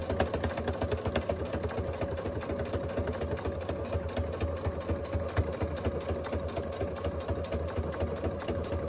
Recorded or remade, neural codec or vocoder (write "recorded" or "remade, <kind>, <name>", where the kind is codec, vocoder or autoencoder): recorded